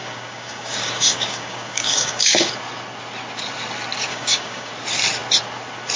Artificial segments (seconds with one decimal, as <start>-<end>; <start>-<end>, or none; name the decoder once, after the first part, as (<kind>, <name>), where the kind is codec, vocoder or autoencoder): 0.0-2.5 (codec, DAC); 4.1-4.7

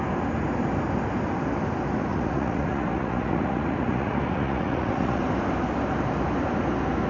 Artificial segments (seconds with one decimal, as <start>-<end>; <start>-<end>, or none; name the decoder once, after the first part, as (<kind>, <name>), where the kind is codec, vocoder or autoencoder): 2.1-5.2 (vocoder, Vocos)

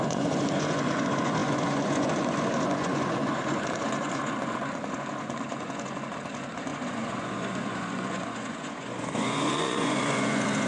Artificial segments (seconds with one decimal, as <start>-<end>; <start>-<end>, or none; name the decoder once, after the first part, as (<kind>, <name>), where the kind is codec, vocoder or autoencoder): 0.0-10.7 (vocoder, Vocos)

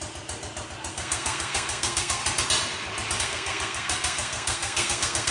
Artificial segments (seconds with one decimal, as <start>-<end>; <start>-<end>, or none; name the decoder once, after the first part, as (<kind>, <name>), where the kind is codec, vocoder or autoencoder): 0.9-2.2 (codec, SNAC); 3.2-5.3